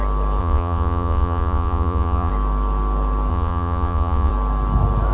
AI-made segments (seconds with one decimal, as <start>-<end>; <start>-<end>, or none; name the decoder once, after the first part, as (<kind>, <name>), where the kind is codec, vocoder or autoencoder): 0.4-2.3 (vocoder, Vocos); 3.3-4.3